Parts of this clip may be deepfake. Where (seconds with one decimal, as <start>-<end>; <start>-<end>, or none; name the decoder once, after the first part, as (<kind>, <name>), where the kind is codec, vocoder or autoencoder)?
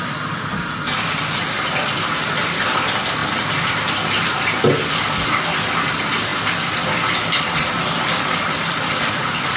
none